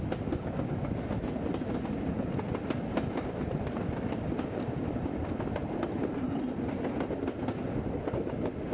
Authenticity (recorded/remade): recorded